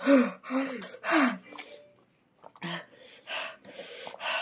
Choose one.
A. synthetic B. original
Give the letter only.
B